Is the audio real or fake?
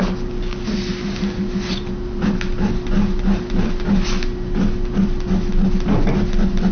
real